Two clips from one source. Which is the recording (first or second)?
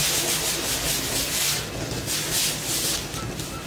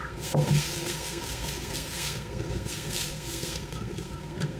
first